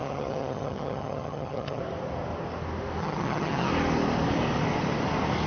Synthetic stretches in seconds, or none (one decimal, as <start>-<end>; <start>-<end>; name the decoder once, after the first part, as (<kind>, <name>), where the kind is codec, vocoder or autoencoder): 0.0-1.8 (vocoder, HiFi-GAN); 3.0-3.7